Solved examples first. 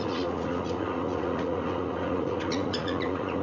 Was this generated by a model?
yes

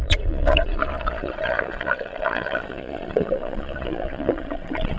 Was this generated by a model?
yes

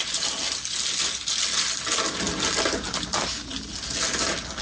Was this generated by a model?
no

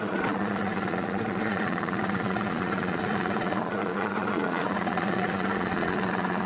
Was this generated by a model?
yes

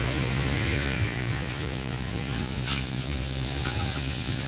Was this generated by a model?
yes